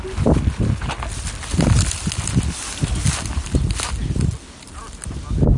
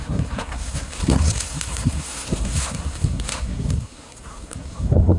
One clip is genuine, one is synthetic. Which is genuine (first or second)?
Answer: first